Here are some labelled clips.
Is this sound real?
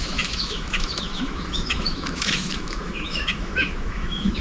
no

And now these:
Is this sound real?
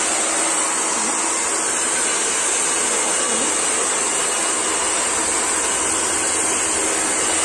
yes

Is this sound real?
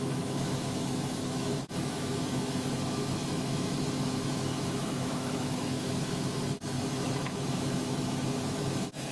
no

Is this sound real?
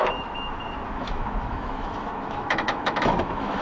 no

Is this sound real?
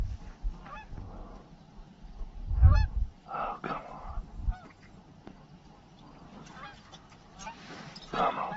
yes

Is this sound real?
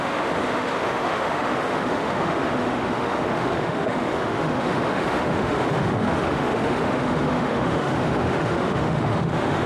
no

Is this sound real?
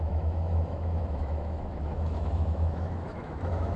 no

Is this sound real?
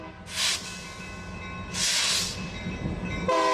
yes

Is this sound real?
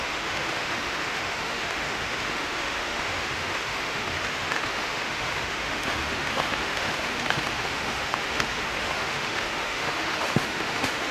no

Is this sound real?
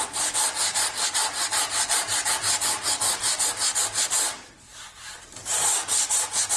yes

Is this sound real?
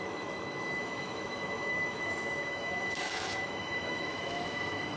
no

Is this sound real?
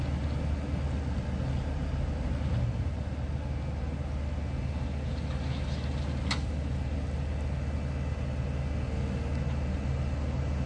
yes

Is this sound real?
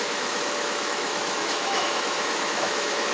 no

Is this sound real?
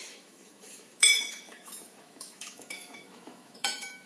no